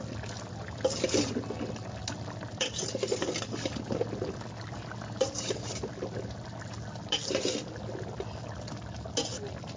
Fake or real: real